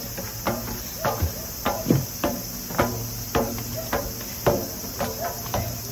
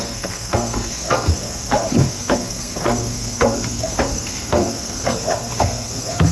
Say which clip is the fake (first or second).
second